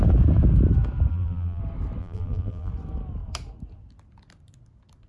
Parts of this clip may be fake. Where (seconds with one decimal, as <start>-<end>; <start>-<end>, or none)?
1.1-1.6; 2.0-2.7